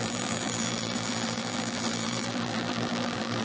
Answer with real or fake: fake